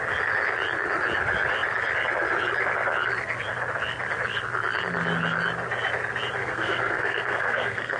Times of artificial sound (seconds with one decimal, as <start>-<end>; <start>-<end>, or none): 6.4-8.0